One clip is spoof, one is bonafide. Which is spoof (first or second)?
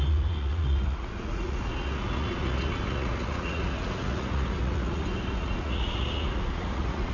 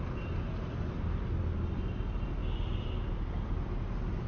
first